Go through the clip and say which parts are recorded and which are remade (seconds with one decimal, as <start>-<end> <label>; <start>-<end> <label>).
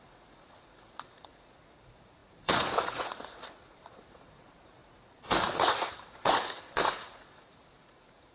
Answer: 0.0-8.3 remade